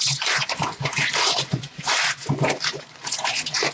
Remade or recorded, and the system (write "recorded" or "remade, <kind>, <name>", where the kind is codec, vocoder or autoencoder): remade, vocoder, Vocos